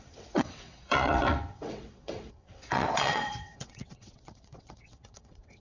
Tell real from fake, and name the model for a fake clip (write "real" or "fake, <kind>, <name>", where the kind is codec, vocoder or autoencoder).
fake, vocoder, WaveNeXt